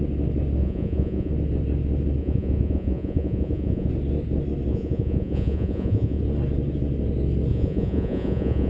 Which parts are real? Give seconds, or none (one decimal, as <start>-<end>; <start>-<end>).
0.0-0.6; 1.3-2.2; 3.9-4.7; 6.2-7.5